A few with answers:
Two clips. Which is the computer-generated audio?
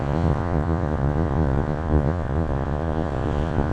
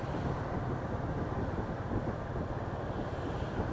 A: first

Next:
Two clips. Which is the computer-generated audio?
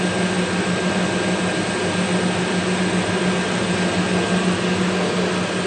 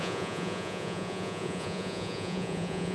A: second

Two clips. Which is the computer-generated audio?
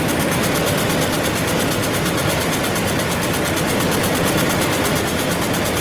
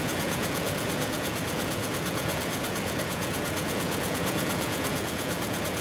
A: second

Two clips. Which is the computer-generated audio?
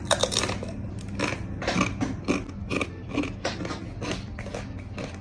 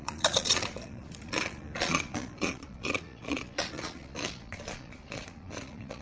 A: second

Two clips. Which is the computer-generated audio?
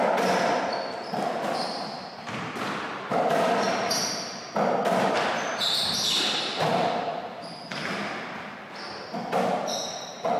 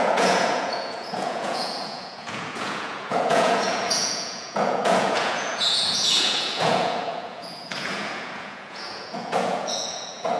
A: second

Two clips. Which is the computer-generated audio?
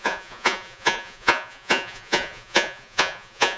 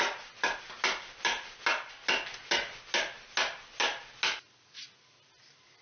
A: first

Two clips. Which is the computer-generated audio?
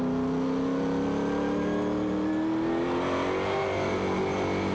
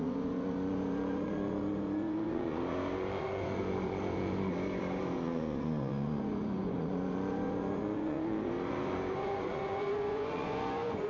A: second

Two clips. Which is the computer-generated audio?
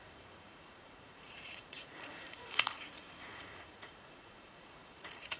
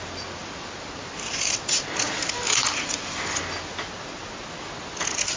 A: first